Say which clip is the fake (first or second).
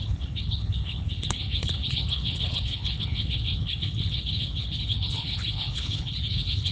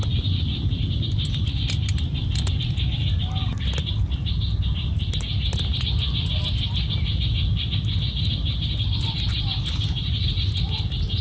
first